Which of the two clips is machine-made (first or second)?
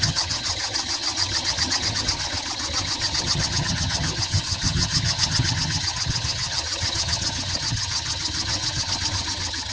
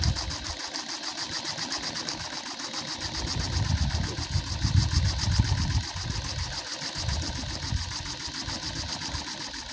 first